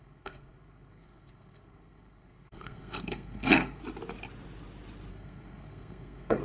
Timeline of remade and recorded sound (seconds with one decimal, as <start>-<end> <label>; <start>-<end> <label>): 0.0-3.8 remade; 3.8-5.1 recorded; 5.1-6.4 remade